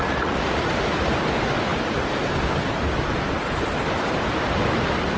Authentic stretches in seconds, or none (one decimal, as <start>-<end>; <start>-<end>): 0.6-5.2